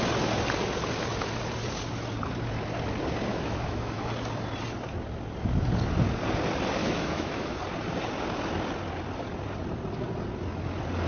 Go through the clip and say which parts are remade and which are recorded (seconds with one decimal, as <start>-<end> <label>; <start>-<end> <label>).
0.0-3.3 recorded; 3.3-4.1 remade; 4.1-6.8 recorded; 6.8-7.6 remade; 7.6-11.1 recorded